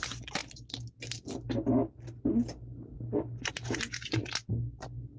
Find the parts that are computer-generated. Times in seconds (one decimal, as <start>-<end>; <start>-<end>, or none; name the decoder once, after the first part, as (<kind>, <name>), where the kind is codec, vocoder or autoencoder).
none